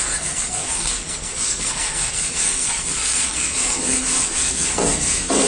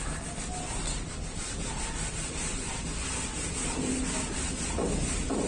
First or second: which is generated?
first